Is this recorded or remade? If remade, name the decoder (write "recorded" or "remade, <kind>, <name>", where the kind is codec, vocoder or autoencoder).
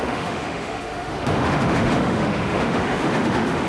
remade, autoencoder, DAC-VAE